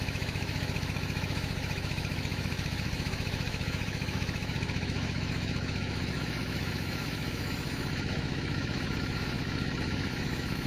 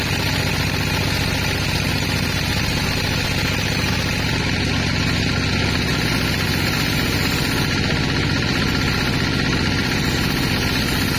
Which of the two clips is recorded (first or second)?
second